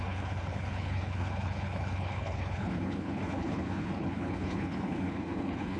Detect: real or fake fake